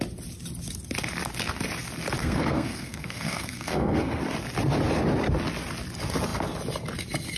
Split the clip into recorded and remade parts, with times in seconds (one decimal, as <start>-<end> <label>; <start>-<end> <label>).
0.0-2.2 recorded; 2.2-4.2 remade; 4.2-7.4 recorded